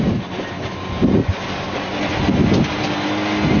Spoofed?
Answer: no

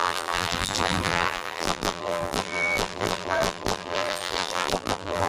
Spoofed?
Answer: yes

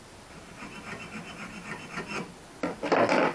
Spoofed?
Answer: no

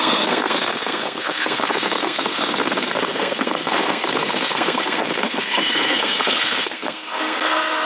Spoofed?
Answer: yes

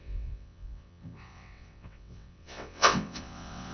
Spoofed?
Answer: yes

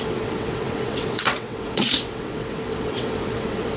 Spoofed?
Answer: yes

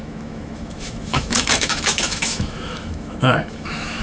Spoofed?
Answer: yes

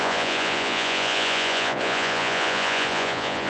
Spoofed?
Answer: yes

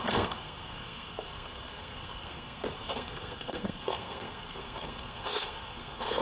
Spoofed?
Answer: yes